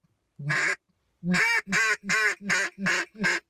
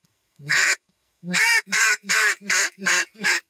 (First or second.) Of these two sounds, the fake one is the second